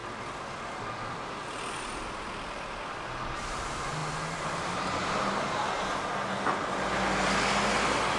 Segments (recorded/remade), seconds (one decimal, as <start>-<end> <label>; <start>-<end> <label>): 0.0-8.2 recorded